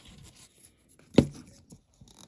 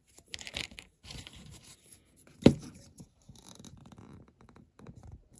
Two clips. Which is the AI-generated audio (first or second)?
second